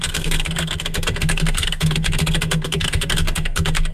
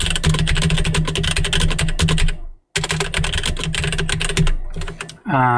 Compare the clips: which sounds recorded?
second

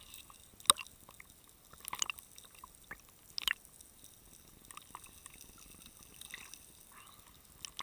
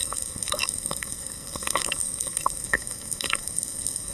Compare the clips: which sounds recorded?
first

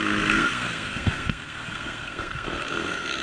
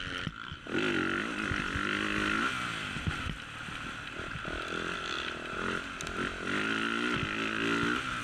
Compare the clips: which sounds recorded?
second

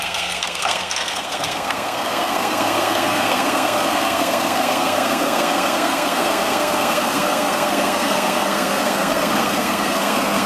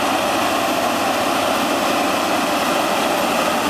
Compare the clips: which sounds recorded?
second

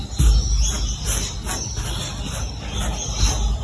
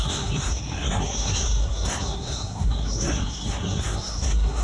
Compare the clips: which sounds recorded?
first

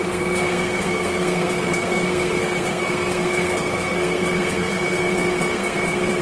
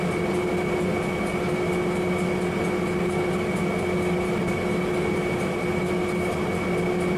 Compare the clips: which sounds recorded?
second